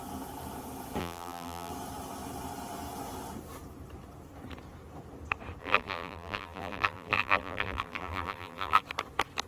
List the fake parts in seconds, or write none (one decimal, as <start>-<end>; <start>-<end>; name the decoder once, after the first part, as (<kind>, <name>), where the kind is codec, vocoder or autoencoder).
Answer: 1.0-1.7 (vocoder, BigVGAN v2); 5.6-8.8